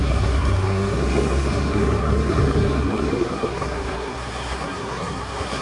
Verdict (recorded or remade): remade